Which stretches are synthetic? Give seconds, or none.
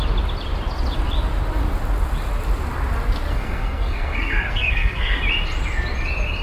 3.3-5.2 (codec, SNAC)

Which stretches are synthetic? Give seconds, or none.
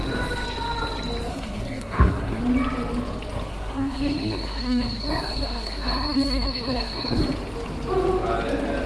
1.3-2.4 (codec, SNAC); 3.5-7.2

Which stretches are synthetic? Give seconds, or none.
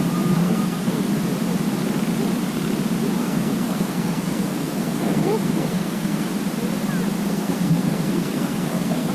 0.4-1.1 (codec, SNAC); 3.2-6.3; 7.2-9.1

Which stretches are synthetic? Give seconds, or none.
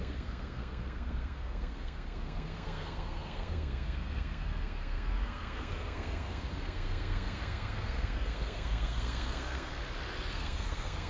0.0-9.7 (codec, SNAC); 10.3-11.1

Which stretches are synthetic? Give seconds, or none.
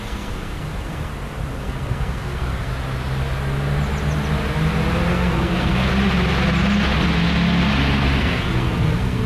0.0-1.1 (codec, SNAC); 1.6-2.7; 5.1-5.9; 8.2-9.3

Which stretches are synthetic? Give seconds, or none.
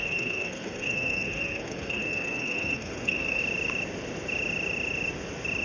0.0-3.4 (codec, SNAC)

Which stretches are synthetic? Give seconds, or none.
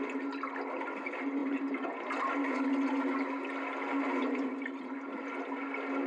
none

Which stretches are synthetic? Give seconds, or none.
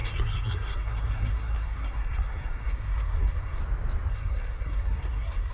0.0-3.6 (codec, SNAC); 4.1-5.5